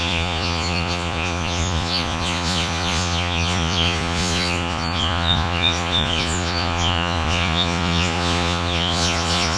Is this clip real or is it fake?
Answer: fake